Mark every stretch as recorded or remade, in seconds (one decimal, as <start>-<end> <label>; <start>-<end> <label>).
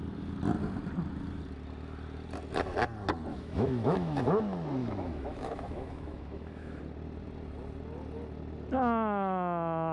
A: 0.0-3.3 recorded; 3.3-4.2 remade; 4.2-4.8 recorded; 4.8-6.8 remade; 6.8-9.9 recorded